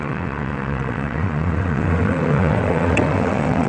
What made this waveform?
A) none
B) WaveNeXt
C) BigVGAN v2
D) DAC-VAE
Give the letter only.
B